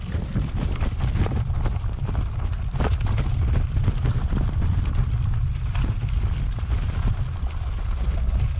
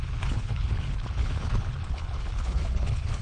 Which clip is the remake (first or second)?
second